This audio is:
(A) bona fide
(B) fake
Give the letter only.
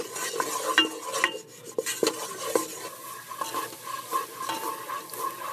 A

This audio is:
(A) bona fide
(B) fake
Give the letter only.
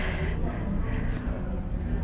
A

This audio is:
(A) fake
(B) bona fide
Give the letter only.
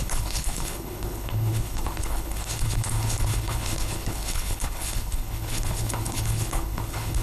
A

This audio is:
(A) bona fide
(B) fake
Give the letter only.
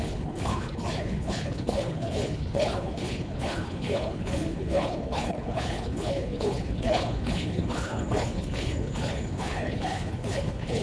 B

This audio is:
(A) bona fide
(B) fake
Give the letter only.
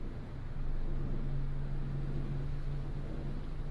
A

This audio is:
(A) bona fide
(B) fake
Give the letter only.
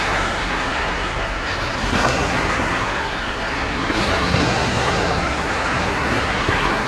B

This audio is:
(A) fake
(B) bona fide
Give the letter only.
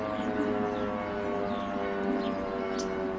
B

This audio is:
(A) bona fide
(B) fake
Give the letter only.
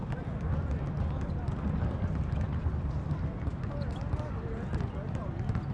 A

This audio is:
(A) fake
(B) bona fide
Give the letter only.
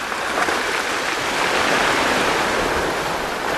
B